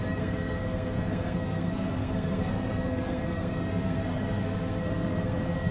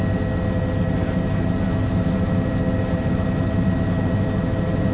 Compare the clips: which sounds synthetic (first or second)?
first